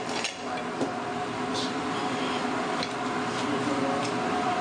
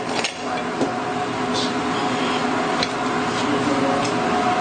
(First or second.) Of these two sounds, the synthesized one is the first